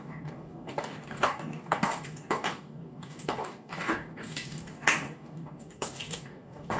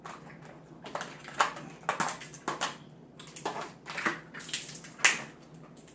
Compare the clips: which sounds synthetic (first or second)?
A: first